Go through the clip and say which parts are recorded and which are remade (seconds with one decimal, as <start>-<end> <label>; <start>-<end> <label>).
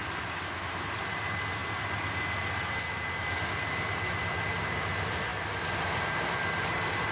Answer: 0.0-7.1 recorded